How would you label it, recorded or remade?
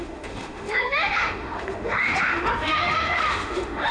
remade